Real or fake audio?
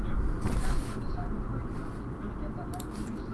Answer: real